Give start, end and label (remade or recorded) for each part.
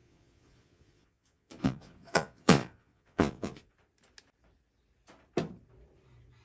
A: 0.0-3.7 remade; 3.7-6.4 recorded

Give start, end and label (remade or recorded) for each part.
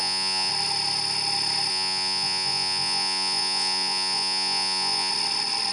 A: 0.0-0.5 remade; 0.5-1.7 recorded; 1.7-5.1 remade; 5.1-5.7 recorded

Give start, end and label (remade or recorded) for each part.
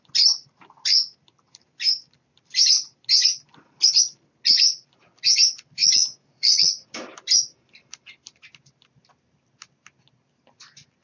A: 0.0-5.8 recorded; 5.8-6.7 remade; 6.7-11.0 recorded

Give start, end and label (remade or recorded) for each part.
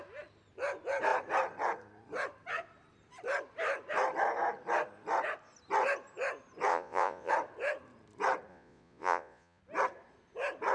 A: 0.0-6.7 recorded; 6.7-7.3 remade; 7.3-8.5 recorded; 8.5-9.6 remade; 9.6-10.7 recorded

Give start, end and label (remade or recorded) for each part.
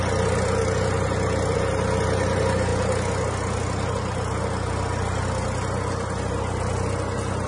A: 0.0-7.5 recorded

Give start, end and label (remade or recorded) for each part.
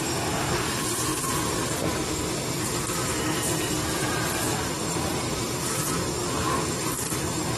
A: 0.0-7.6 recorded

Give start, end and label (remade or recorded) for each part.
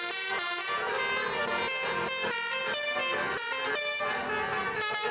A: 0.0-5.1 recorded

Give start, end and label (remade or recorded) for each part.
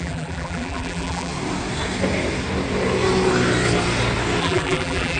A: 0.0-1.3 remade; 1.3-4.4 recorded; 4.4-5.2 remade